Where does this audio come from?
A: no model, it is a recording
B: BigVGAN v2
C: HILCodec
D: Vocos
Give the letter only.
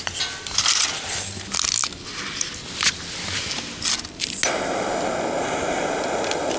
A